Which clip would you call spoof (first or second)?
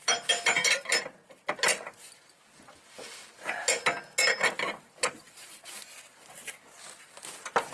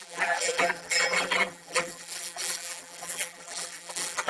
second